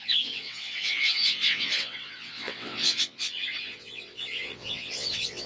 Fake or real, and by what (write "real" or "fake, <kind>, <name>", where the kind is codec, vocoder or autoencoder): fake, vocoder, WaveNeXt